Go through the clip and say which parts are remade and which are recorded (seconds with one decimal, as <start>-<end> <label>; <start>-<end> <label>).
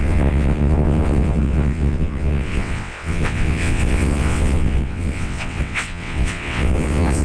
0.0-7.2 remade